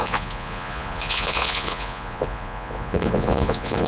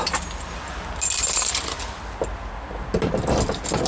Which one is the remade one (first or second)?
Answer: first